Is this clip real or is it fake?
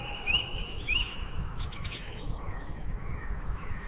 fake